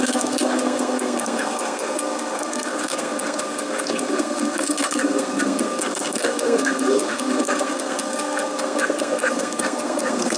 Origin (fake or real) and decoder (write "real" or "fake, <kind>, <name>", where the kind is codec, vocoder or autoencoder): fake, codec, SNAC